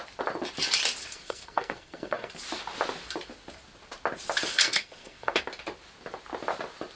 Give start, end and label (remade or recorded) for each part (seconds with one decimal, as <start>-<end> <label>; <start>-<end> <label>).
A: 0.0-1.0 recorded; 1.0-2.3 remade; 2.3-4.5 recorded; 4.5-5.4 remade; 5.4-7.0 recorded